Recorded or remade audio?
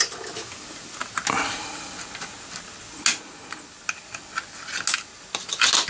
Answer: recorded